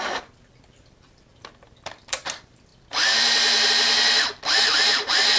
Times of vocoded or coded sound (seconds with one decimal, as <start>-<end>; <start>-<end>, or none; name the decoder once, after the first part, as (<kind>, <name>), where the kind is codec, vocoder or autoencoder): 0.0-5.4 (vocoder, BigVGAN v2)